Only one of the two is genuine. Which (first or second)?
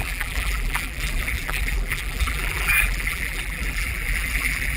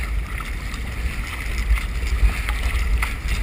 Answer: second